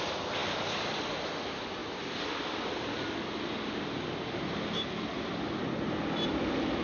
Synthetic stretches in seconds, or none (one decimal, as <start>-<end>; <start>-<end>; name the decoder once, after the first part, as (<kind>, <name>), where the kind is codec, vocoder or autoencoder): none